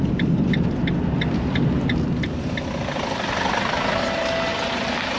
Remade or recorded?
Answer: recorded